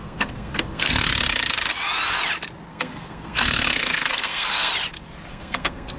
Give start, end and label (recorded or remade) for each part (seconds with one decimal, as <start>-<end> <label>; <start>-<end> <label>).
0.0-1.1 remade; 1.1-2.7 recorded; 2.7-4.7 remade; 4.7-5.3 recorded; 5.3-6.0 remade